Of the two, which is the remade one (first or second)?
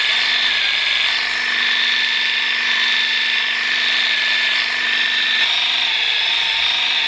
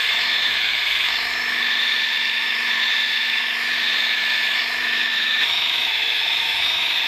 second